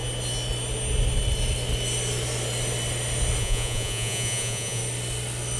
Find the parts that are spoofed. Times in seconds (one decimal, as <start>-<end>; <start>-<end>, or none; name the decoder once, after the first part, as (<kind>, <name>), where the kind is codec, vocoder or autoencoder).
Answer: 3.4-4.8 (vocoder, Vocos)